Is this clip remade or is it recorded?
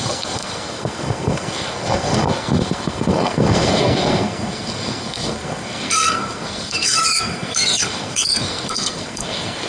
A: remade